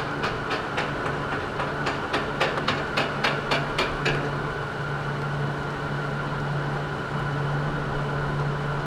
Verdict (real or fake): real